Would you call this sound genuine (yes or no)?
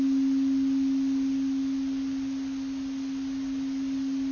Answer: yes